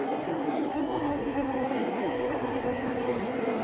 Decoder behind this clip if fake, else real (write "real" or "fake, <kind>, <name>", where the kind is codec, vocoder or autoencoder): fake, codec, SNAC